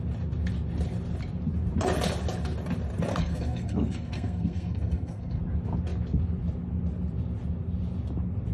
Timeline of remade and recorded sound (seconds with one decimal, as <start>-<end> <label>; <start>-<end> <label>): 0.0-3.1 recorded; 3.1-5.4 remade; 5.4-8.5 recorded